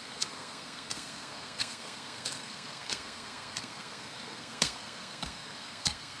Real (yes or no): no